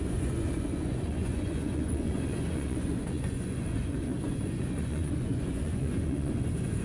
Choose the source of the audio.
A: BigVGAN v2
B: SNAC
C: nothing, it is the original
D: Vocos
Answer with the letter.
D